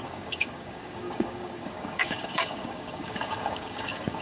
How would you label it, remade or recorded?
remade